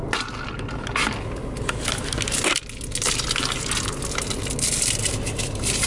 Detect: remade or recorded recorded